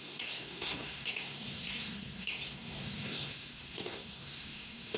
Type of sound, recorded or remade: remade